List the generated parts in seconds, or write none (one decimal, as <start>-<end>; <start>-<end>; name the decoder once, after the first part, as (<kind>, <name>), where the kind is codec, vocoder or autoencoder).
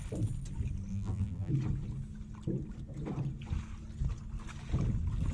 0.9-1.5 (vocoder, BigVGAN v2)